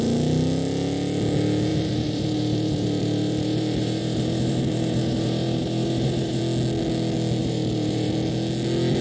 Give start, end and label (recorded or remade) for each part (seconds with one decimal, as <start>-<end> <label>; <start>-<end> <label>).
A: 0.0-1.7 recorded; 1.7-6.4 remade; 6.4-7.4 recorded; 7.4-8.1 remade; 8.1-9.0 recorded